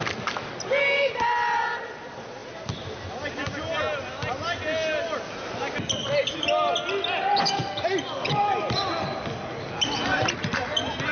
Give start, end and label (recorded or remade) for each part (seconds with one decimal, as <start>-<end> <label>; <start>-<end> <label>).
0.0-11.1 recorded

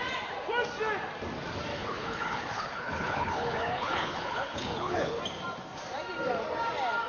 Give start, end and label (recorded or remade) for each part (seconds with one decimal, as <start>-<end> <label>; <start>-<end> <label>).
0.0-1.7 recorded; 1.7-5.2 remade; 5.2-7.1 recorded

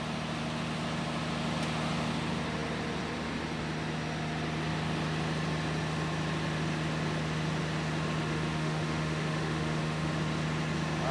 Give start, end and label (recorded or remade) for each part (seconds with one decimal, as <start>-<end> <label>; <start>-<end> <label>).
0.0-8.2 recorded; 8.2-10.1 remade; 10.1-11.1 recorded

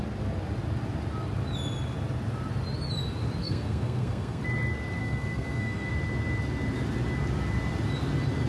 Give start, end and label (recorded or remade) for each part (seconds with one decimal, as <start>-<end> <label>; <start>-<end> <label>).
0.0-3.4 recorded; 3.4-4.4 remade; 4.4-5.0 recorded; 5.0-5.9 remade; 5.9-8.5 recorded

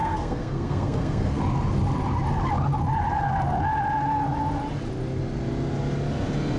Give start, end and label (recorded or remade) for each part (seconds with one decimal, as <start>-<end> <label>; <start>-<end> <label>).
0.0-1.4 remade; 1.4-6.6 recorded

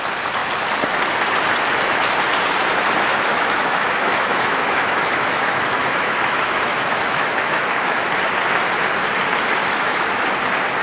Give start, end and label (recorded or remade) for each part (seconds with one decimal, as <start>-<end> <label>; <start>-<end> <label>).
0.0-3.1 recorded; 3.1-8.1 remade; 8.1-9.6 recorded; 9.6-10.2 remade; 10.2-10.8 recorded

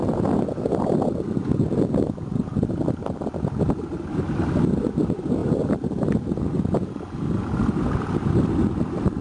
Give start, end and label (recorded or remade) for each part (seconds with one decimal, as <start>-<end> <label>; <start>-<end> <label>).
0.0-5.4 recorded; 5.4-6.6 remade; 6.6-9.2 recorded